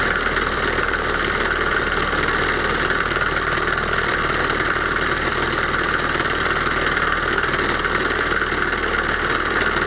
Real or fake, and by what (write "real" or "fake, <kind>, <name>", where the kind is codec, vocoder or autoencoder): fake, vocoder, BigVGAN v2